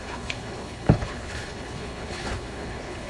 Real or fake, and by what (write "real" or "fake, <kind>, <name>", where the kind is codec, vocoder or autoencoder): fake, codec, HILCodec